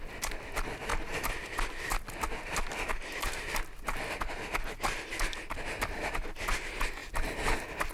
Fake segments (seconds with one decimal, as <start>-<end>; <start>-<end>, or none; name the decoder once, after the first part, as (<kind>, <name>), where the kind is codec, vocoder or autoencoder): none